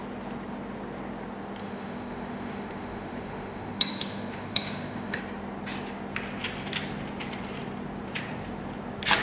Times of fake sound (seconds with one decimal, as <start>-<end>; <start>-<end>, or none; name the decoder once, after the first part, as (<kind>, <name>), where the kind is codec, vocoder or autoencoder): 1.6-5.2 (autoencoder, DAC-VAE)